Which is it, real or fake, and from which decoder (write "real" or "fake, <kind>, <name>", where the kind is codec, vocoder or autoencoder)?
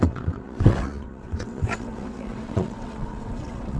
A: fake, vocoder, WaveNeXt